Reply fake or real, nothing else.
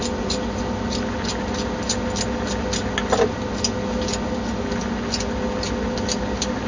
real